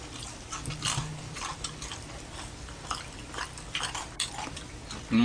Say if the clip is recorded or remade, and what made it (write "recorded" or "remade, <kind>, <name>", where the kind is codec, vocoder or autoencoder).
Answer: recorded